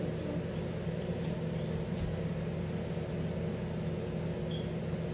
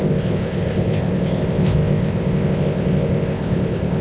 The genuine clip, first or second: first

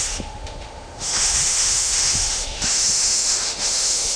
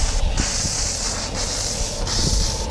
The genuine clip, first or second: second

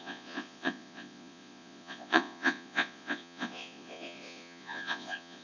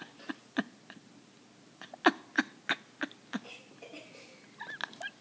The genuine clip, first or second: second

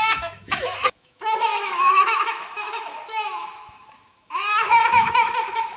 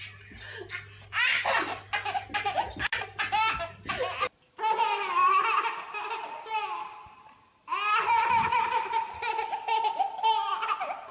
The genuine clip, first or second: second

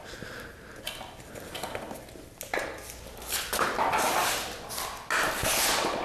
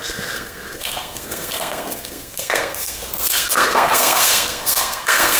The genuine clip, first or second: first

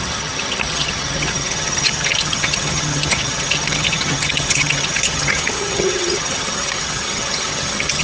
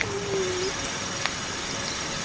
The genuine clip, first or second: second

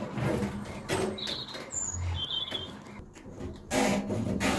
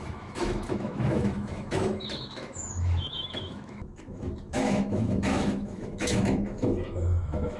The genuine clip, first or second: first